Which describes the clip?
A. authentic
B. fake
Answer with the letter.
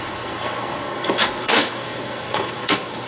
B